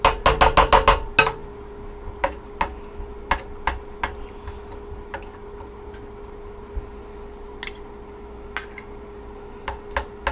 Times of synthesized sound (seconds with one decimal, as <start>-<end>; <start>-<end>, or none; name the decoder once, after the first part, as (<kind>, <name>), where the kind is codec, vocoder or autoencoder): none